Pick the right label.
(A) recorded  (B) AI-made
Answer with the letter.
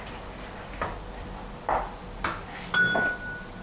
A